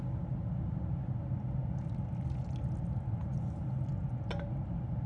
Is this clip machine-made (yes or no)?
no